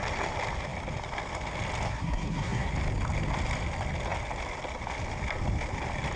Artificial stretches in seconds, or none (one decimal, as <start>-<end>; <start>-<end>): 1.9-2.7